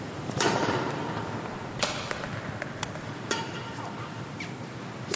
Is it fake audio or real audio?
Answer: fake